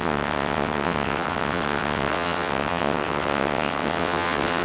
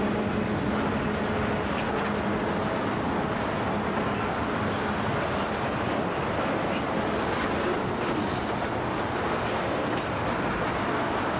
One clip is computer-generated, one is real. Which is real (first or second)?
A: second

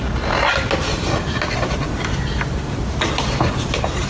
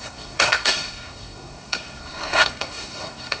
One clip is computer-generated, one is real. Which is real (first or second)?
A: first